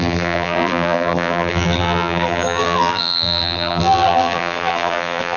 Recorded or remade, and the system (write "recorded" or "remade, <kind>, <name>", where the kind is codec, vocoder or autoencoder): remade, vocoder, BigVGAN v2